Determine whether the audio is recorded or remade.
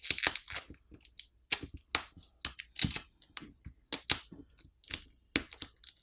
recorded